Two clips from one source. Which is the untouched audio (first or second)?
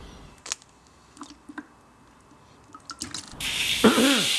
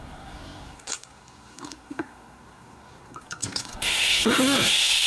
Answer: first